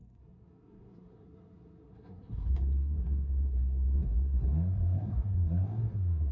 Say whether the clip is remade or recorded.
remade